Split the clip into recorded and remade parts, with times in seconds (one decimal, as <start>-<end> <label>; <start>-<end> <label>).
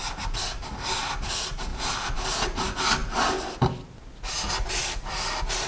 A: 0.0-1.7 recorded; 1.7-2.3 remade; 2.3-5.7 recorded